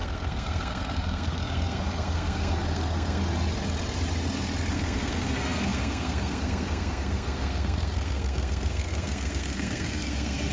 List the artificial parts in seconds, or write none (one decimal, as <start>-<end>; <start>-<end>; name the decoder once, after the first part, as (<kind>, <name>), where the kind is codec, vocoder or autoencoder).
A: 0.0-3.2 (codec, SNAC); 4.7-10.5